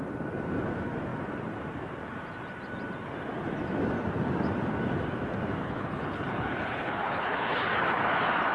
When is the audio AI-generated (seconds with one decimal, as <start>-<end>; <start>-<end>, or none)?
5.6-8.0